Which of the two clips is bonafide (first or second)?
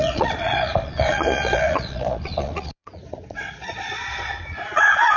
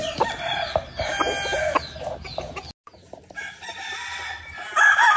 second